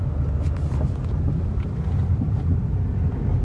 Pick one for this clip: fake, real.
real